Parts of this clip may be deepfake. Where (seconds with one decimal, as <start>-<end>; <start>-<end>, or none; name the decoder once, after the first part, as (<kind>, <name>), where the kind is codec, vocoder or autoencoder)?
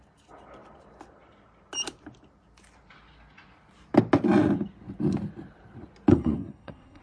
6.1-7.0 (codec, SNAC)